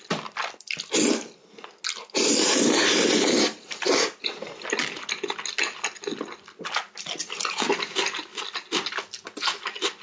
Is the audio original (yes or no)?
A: yes